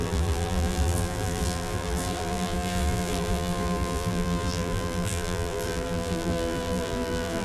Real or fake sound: fake